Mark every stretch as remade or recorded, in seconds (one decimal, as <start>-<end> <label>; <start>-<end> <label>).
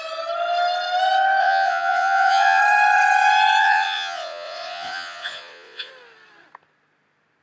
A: 0.0-1.4 recorded; 1.4-2.6 remade; 2.6-3.6 recorded; 3.6-5.9 remade; 5.9-7.4 recorded